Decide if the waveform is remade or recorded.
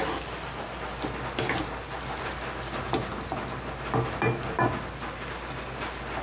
recorded